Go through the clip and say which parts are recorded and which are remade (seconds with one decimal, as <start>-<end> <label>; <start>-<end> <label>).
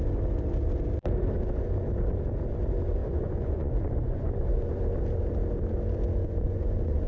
0.0-3.0 recorded; 3.0-4.8 remade; 4.8-6.2 recorded; 6.2-7.1 remade